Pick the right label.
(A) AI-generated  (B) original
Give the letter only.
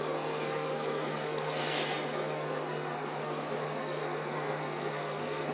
A